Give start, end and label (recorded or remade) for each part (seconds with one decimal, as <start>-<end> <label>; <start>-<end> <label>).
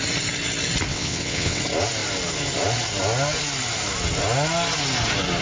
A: 0.0-0.9 recorded; 0.9-1.6 remade; 1.6-5.4 recorded